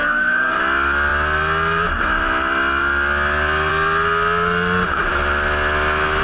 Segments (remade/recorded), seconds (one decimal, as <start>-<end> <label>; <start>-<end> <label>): 0.0-0.6 remade; 0.6-6.2 recorded